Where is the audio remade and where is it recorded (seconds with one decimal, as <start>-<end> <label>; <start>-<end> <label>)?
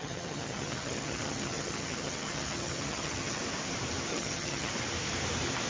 0.0-3.4 remade; 3.4-4.1 recorded; 4.1-4.7 remade; 4.7-5.7 recorded